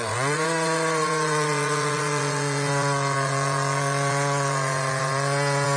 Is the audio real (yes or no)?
no